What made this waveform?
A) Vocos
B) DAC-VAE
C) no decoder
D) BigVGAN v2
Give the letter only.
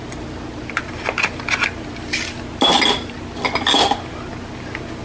C